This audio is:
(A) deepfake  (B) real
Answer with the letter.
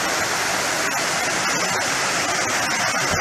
B